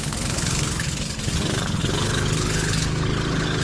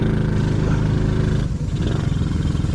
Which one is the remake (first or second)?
first